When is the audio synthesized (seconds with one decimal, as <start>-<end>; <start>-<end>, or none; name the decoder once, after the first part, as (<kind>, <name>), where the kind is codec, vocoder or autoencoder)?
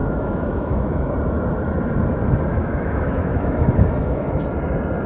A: 0.0-1.1 (autoencoder, DAC-VAE); 2.5-4.4